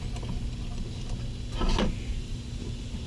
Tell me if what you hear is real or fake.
real